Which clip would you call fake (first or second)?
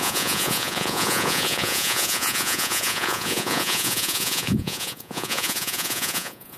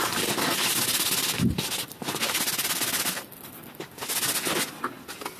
first